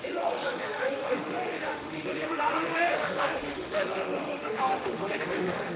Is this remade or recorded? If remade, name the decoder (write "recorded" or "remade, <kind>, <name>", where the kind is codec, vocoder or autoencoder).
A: remade, autoencoder, DAC-VAE